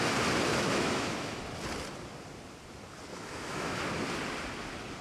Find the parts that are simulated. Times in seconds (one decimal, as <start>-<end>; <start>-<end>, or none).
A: 0.5-1.4; 3.1-3.8

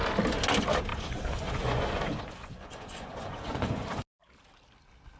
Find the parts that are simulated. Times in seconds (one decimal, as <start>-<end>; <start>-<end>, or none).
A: 0.9-4.0

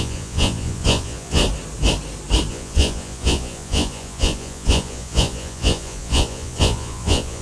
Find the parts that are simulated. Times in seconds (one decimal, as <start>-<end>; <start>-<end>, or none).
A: 0.0-1.4; 2.5-7.4

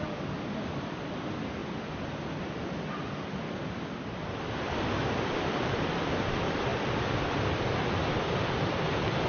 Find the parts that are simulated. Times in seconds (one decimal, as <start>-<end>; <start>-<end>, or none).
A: none

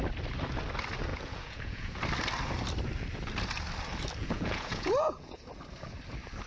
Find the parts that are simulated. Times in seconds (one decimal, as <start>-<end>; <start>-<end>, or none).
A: 1.1-2.0; 4.2-5.5

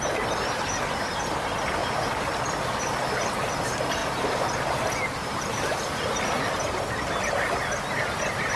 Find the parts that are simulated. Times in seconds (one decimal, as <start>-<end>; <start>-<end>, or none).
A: 1.8-2.4; 4.0-4.6; 5.2-6.2

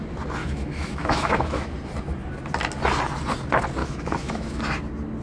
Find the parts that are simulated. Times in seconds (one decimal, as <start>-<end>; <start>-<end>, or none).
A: 0.4-1.7; 3.8-4.6

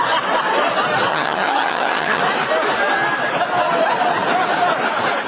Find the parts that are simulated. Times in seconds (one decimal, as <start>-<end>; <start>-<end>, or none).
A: 1.1-2.2